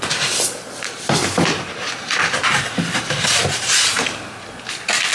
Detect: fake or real real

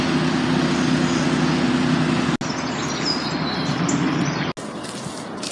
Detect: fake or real real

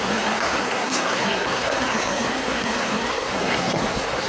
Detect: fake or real fake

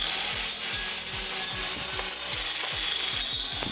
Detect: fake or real real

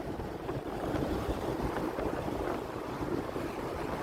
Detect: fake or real fake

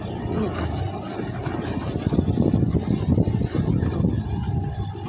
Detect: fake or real real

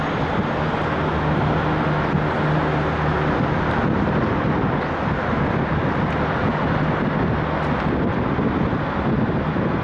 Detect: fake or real real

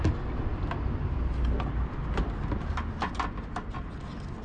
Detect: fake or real real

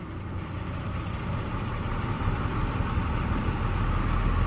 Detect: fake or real real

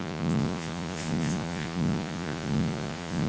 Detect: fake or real fake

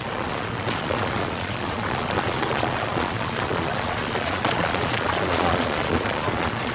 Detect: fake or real fake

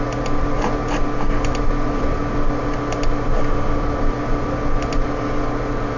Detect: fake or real real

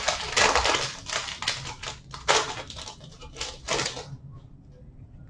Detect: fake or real real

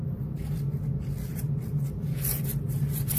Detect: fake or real real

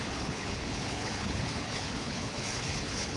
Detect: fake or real fake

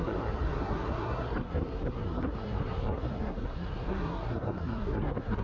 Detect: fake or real fake